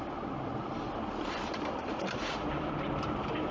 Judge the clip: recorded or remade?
remade